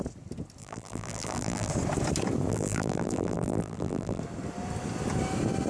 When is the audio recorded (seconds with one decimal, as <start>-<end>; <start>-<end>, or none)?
0.0-0.6; 1.7-2.5; 4.2-5.7